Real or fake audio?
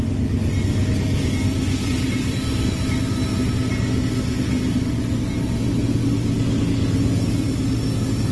real